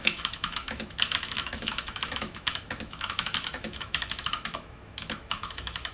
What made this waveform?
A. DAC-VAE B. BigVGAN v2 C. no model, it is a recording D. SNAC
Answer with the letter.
A